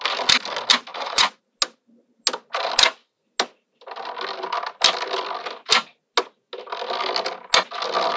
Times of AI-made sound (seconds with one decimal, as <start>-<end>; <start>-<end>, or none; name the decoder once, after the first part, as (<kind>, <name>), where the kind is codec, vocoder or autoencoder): 0.9-1.4 (vocoder, Vocos)